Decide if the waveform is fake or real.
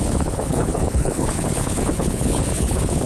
fake